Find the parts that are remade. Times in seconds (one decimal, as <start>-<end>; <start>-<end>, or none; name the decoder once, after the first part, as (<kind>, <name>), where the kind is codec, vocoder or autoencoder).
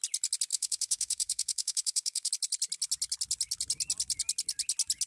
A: 0.5-2.3 (autoencoder, DAC-VAE)